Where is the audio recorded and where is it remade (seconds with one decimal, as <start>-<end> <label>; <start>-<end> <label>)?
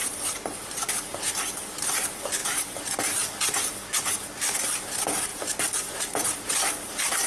0.0-0.9 remade; 0.9-5.3 recorded; 5.3-6.7 remade; 6.7-7.3 recorded